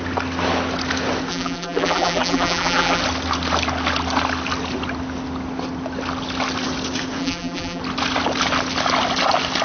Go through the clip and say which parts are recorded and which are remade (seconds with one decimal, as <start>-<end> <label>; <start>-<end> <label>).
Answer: 0.0-1.3 recorded; 1.3-3.0 remade; 3.0-7.2 recorded; 7.2-7.8 remade; 7.8-9.6 recorded